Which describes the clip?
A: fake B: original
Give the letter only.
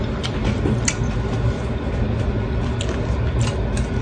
B